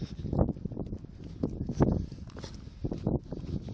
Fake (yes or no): no